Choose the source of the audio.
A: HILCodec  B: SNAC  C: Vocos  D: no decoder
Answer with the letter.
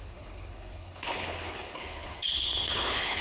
A